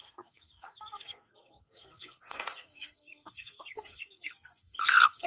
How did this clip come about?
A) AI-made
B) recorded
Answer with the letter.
A